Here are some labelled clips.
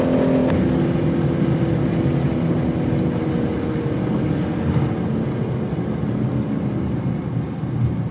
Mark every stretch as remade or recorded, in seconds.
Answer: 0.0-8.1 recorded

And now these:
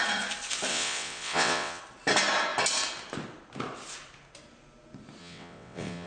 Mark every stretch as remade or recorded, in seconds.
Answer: 0.0-0.7 recorded; 0.7-1.8 remade; 1.8-5.2 recorded; 5.2-6.1 remade